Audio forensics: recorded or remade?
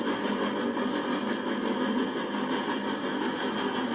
recorded